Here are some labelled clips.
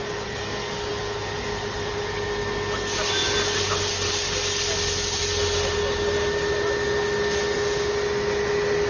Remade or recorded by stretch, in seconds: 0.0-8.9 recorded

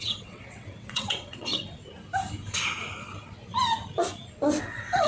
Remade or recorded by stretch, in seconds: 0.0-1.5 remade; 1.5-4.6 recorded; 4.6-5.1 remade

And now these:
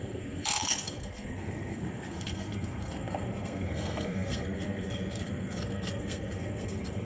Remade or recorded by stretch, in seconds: 0.0-7.0 remade